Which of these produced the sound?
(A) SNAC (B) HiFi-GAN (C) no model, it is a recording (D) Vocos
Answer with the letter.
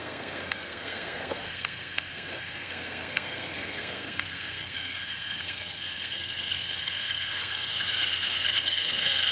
A